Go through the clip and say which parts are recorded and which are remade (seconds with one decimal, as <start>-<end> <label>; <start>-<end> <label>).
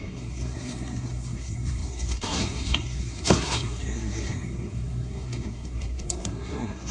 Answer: 0.0-6.9 remade